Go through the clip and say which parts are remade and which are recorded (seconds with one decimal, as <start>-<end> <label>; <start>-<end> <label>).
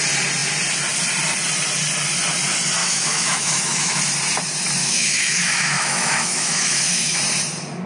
0.0-2.8 recorded; 2.8-4.0 remade; 4.0-4.8 recorded; 4.8-7.2 remade; 7.2-7.9 recorded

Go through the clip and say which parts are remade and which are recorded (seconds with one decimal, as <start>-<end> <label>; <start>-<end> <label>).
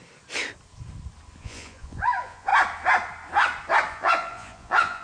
0.0-1.4 recorded; 1.4-2.5 remade; 2.5-3.9 recorded; 3.9-5.0 remade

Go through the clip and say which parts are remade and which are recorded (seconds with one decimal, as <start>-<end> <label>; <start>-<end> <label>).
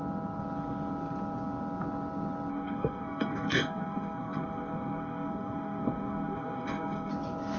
0.0-2.5 recorded; 2.5-7.1 remade; 7.1-7.6 recorded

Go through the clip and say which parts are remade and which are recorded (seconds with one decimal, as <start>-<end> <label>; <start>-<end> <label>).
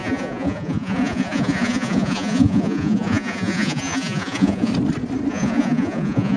0.0-4.7 remade; 4.7-5.3 recorded; 5.3-6.4 remade